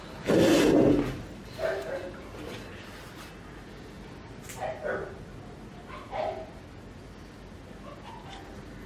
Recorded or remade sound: recorded